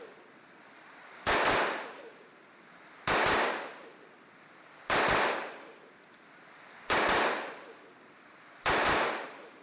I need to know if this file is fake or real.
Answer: real